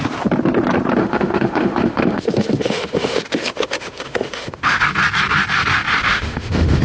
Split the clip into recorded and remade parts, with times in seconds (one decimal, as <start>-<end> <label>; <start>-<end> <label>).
0.0-1.0 recorded; 1.0-4.8 remade; 4.8-6.0 recorded; 6.0-6.8 remade